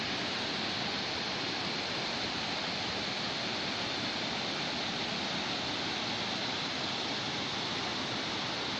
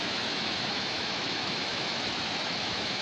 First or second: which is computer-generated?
second